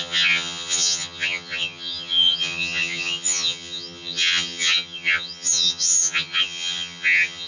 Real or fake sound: fake